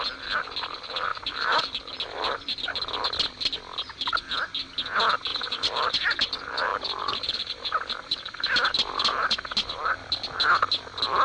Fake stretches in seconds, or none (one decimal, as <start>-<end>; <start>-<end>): 1.1-1.6; 5.3-6.2; 6.7-8.7